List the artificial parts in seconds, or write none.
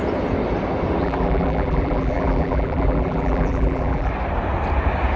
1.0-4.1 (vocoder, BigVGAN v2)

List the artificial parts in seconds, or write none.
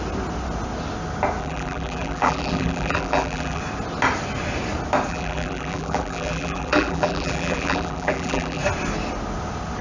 1.4-3.6 (vocoder, BigVGAN v2); 5.1-8.6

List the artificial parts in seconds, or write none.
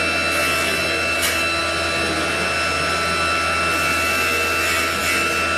none